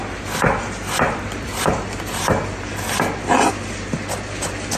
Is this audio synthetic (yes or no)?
no